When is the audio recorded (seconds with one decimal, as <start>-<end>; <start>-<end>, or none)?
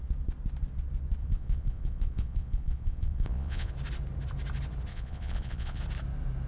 0.0-1.2; 3.7-4.9; 5.8-6.5